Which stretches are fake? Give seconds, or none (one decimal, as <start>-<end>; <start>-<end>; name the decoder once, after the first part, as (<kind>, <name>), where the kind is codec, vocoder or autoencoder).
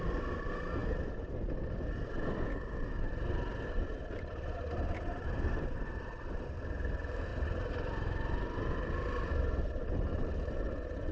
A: none